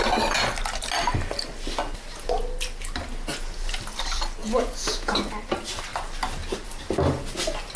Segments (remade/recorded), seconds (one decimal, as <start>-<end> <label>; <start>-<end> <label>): 0.0-4.4 recorded; 4.4-5.3 remade; 5.3-7.8 recorded